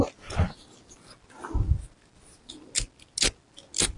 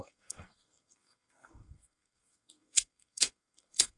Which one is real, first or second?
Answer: first